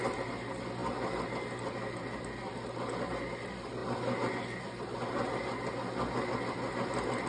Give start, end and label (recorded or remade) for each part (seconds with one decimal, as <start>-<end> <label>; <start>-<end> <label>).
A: 0.0-7.3 recorded